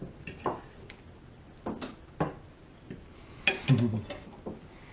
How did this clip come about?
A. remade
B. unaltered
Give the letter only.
B